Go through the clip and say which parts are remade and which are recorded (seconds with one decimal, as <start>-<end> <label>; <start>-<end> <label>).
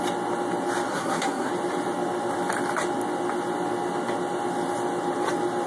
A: 0.0-0.9 recorded; 0.9-1.5 remade; 1.5-5.7 recorded